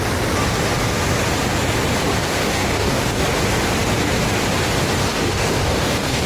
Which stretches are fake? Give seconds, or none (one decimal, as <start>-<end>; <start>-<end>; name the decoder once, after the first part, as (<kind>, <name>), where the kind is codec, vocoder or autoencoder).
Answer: 2.2-3.2 (codec, DAC); 5.1-6.3